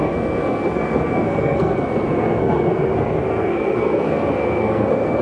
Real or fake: fake